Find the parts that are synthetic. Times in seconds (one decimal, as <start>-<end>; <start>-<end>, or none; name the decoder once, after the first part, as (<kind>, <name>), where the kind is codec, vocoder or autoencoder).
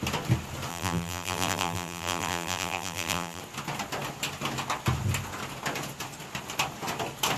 0.7-3.4 (vocoder, BigVGAN v2)